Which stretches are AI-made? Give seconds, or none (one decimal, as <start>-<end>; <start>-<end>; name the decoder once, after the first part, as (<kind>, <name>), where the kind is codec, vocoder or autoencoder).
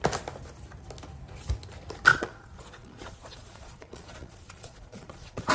2.1-5.5 (vocoder, Vocos)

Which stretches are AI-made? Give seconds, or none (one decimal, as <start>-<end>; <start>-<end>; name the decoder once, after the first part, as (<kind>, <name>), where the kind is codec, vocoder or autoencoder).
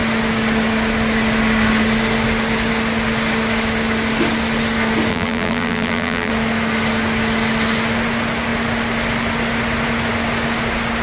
5.1-6.3 (vocoder, BigVGAN v2)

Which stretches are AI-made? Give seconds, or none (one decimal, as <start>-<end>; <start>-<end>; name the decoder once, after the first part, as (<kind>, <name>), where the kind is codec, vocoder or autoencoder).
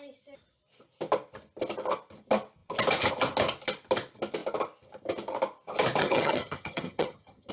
6.0-7.5 (vocoder, HiFi-GAN)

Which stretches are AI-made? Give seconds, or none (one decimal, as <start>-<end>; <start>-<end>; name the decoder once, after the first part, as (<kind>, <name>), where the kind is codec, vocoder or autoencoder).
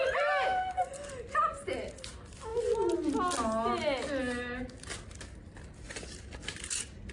none